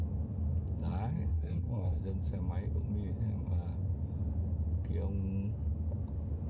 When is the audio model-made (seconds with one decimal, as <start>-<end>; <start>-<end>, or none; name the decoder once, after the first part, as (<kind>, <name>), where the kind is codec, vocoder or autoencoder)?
1.3-2.0 (codec, SNAC)

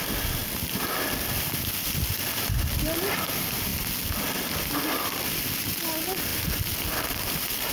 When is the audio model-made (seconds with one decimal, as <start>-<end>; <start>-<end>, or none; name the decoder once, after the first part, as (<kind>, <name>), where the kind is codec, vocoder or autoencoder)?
none

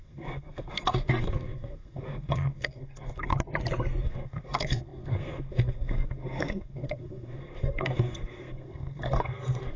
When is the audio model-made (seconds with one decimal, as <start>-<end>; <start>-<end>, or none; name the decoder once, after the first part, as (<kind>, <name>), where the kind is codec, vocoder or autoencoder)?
0.0-3.3 (codec, SNAC); 4.0-9.8

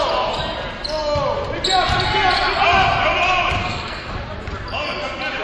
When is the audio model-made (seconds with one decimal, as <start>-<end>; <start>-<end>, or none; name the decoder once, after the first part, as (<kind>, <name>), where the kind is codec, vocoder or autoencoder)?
3.6-4.1 (codec, SNAC)